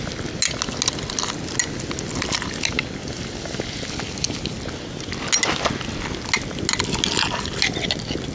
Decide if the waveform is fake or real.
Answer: real